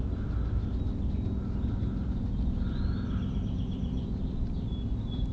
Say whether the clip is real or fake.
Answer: real